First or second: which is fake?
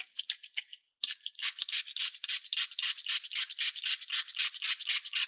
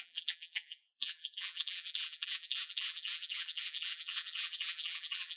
second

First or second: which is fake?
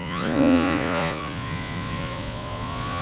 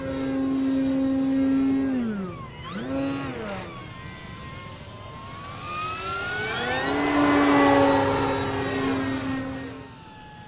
first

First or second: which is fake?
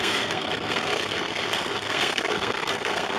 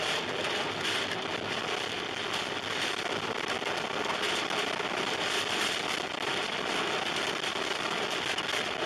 first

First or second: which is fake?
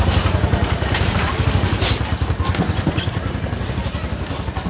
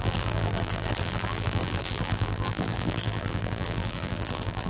second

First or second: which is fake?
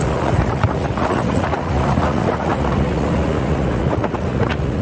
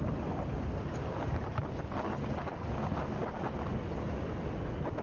first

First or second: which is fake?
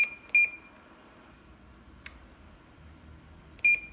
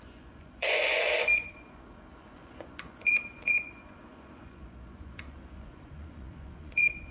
second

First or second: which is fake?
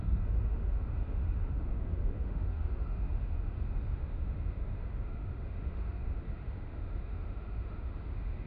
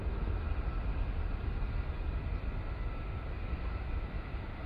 first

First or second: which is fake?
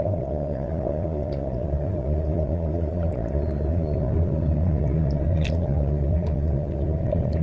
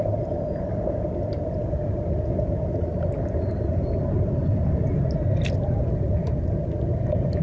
first